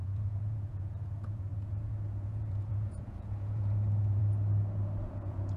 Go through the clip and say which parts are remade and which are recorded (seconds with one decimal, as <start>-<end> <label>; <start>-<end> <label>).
0.0-4.2 remade; 4.2-5.0 recorded; 5.0-5.6 remade